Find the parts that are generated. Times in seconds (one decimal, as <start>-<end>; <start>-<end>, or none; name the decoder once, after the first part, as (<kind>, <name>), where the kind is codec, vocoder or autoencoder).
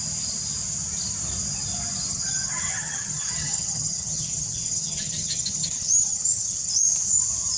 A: 2.1-6.7 (vocoder, HiFi-GAN)